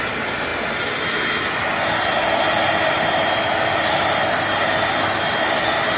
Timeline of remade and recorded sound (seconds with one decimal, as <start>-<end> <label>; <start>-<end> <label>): 0.0-6.0 recorded